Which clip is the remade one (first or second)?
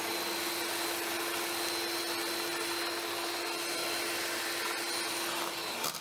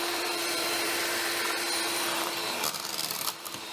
second